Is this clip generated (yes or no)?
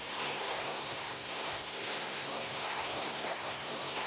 yes